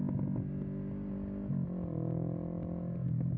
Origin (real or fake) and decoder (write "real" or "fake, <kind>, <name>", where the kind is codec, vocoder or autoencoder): real